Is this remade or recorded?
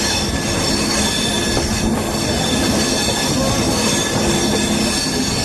recorded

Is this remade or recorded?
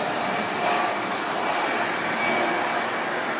recorded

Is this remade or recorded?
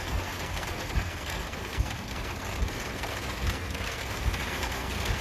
remade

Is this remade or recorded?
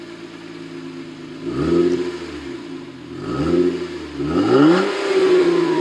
recorded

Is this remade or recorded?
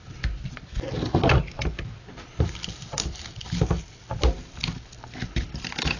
recorded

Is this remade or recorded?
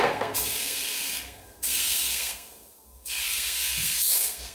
remade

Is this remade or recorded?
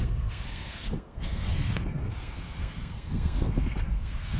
remade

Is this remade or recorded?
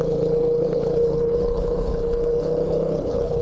remade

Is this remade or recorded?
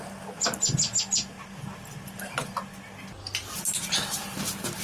recorded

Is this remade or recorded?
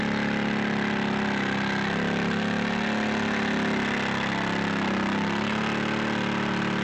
recorded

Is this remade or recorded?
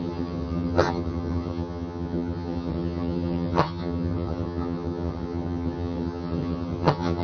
remade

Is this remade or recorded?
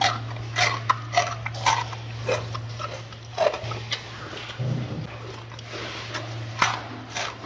recorded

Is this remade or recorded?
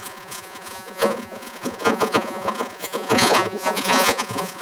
remade